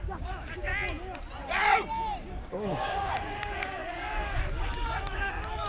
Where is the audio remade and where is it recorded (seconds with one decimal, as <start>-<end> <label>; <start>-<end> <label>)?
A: 0.0-0.7 remade; 0.7-2.4 recorded; 2.4-5.7 remade